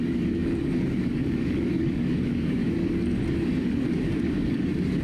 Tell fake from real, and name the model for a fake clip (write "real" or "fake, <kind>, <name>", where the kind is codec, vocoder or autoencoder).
fake, codec, DAC